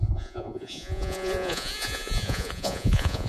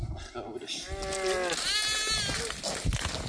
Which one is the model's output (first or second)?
first